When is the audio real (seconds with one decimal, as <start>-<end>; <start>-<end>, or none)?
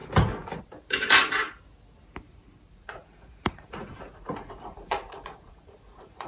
0.0-2.7